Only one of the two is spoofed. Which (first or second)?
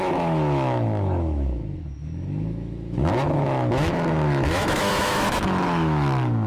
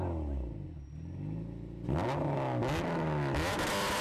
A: first